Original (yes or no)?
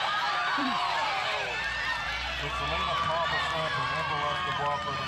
no